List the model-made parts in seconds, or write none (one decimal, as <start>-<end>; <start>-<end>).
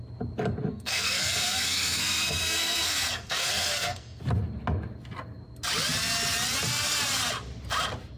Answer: 0.7-4.2